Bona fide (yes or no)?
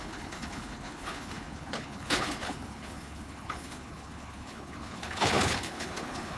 no